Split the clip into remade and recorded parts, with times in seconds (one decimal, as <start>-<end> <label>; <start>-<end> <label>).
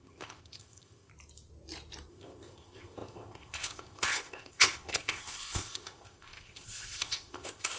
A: 0.0-1.1 remade; 1.1-2.1 recorded; 2.1-7.8 remade